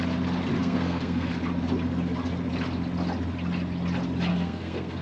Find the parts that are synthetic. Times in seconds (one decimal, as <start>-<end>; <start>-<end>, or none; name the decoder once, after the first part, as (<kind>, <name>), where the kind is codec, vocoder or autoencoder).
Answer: 0.6-1.3 (codec, SNAC); 4.3-5.0

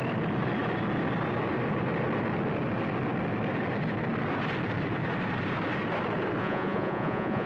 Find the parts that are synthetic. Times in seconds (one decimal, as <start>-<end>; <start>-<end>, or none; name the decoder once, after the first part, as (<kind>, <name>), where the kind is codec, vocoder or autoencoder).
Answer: 6.4-7.5 (vocoder, Vocos)

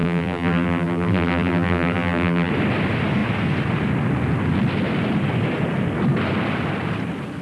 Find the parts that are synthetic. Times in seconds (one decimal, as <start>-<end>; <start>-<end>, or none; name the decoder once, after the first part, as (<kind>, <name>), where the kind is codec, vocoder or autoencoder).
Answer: 0.0-2.5 (vocoder, BigVGAN v2)

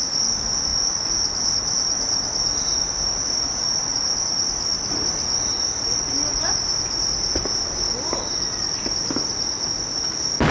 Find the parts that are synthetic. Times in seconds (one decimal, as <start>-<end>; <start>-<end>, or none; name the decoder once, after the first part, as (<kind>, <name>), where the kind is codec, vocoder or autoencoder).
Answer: none

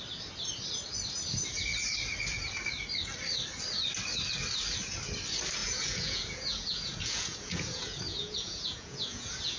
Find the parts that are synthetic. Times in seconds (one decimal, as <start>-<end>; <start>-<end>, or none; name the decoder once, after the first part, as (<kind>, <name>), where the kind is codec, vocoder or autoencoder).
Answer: 5.6-9.6 (vocoder, Vocos)